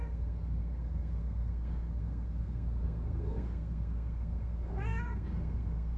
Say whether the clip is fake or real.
fake